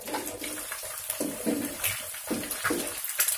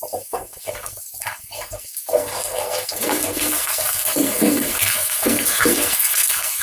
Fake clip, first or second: second